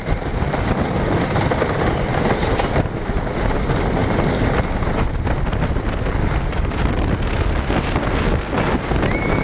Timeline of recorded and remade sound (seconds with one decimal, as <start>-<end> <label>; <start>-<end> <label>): 0.0-9.4 recorded